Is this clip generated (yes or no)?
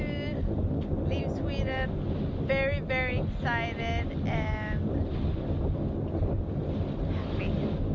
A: no